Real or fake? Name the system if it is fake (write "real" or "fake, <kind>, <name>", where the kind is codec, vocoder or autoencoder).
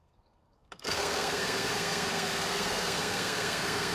fake, codec, SNAC